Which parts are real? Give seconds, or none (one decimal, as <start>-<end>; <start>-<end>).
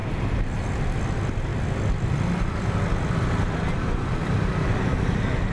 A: 0.0-5.5